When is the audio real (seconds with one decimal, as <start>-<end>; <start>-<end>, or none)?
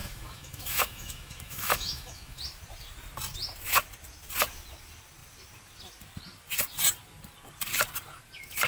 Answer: 2.4-8.7